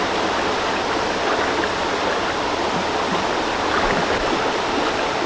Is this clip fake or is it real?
real